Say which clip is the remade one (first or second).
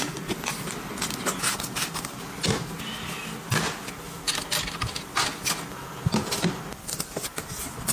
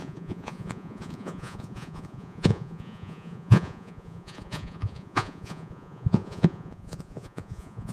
second